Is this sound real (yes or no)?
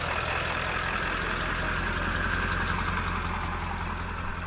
yes